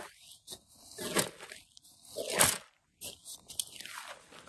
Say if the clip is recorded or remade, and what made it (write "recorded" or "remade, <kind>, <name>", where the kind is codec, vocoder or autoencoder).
recorded